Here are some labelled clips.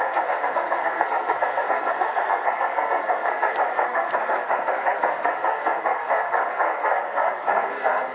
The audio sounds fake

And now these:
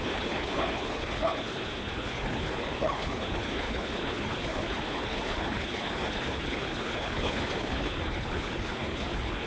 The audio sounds fake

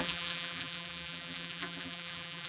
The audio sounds fake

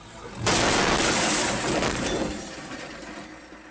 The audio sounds real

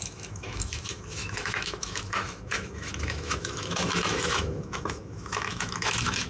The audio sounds fake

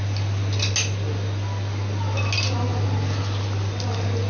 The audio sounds real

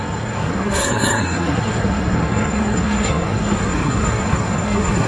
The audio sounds fake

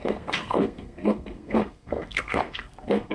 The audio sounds fake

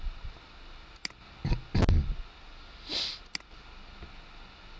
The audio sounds real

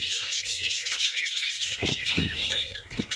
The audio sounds fake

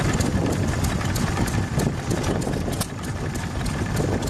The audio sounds real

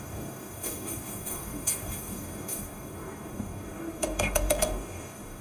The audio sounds fake